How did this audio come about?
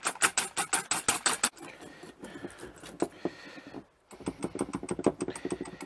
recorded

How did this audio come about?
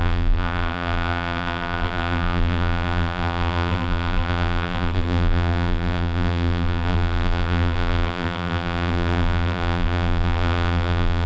remade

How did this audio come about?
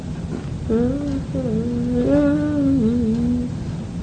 recorded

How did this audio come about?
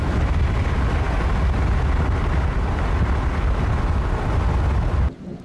recorded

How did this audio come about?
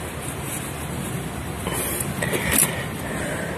recorded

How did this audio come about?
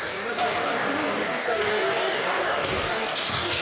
remade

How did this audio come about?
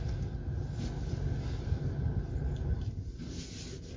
recorded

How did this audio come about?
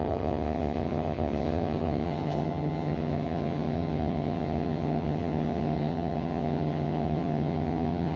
remade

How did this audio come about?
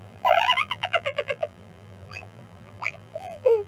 remade